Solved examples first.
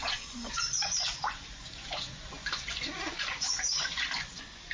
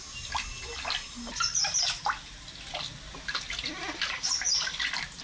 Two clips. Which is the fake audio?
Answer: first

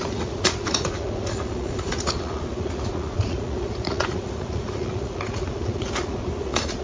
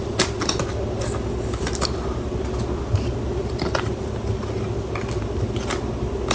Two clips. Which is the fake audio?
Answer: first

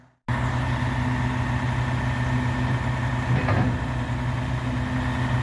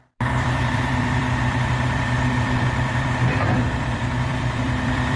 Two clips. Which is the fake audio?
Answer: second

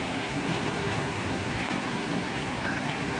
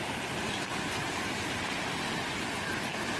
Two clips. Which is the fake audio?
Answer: first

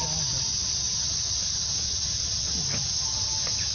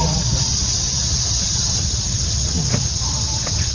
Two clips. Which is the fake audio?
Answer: second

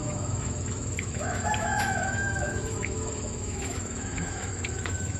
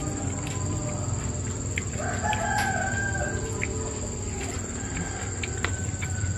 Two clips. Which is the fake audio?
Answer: first